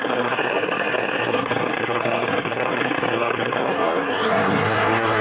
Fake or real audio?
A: fake